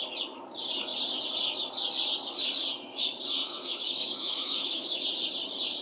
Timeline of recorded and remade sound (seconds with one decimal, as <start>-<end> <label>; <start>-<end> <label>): 0.0-3.4 recorded; 3.4-5.0 remade; 5.0-5.8 recorded